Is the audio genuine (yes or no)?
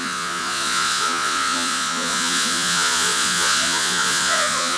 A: no